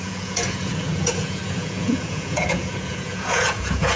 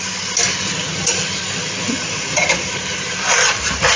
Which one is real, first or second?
second